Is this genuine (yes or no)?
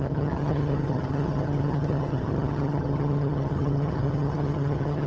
no